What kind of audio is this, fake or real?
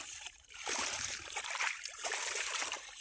fake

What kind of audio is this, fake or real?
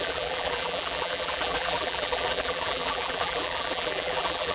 fake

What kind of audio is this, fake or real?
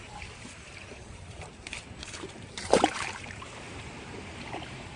fake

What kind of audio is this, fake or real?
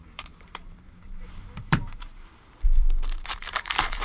fake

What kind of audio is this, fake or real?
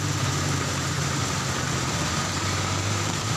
fake